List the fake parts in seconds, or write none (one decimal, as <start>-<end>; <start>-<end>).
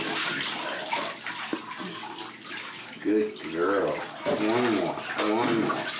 none